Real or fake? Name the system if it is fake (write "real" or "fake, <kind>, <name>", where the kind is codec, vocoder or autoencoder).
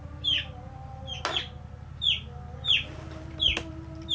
real